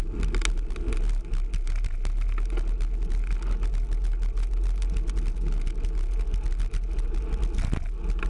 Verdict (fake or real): real